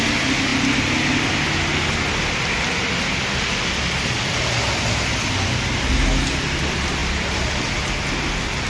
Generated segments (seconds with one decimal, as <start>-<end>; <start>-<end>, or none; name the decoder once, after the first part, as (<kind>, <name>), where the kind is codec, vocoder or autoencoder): none